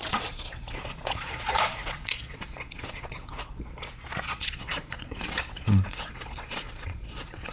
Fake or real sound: fake